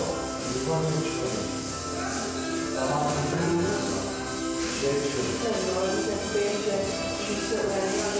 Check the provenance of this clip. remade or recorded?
recorded